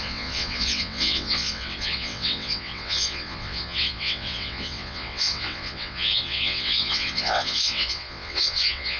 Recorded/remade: remade